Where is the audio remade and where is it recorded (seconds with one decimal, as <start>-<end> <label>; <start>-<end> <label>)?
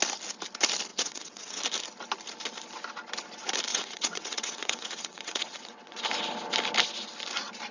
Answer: 0.0-0.9 recorded; 0.9-1.6 remade; 1.6-3.7 recorded; 3.7-6.0 remade; 6.0-7.7 recorded